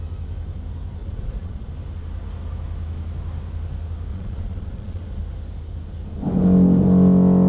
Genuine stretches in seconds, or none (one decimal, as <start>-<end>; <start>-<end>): 0.0-1.0; 1.7-4.1; 5.2-7.5